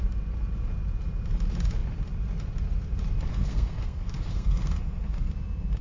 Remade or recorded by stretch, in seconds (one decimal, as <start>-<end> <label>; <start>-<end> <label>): 0.0-3.3 recorded; 3.3-5.3 remade; 5.3-5.8 recorded